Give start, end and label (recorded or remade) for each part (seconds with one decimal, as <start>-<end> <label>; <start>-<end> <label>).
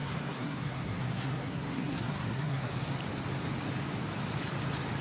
0.0-2.7 remade; 2.7-5.0 recorded